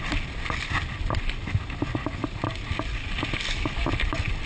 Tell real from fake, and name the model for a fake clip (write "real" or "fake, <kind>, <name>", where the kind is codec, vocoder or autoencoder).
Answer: real